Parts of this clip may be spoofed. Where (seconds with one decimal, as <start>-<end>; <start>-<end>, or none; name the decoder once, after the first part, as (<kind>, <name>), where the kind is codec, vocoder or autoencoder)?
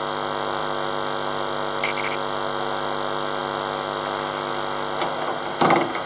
3.4-4.5 (vocoder, BigVGAN v2)